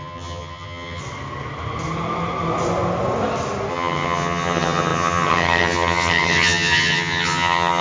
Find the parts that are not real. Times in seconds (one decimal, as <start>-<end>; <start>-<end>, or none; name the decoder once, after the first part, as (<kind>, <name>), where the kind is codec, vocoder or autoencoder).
0.0-1.0 (vocoder, HiFi-GAN); 3.7-7.8